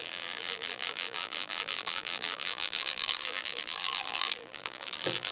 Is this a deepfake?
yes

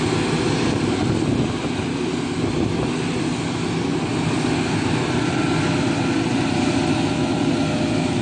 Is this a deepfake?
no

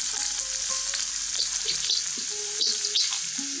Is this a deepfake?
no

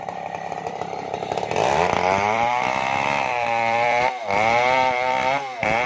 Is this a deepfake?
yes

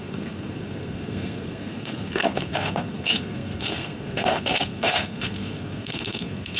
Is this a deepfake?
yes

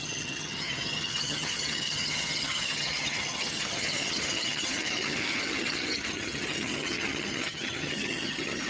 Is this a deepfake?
yes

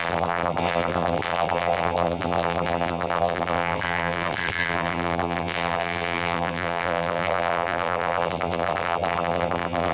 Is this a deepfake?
yes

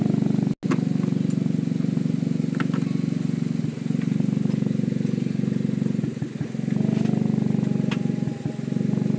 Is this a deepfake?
no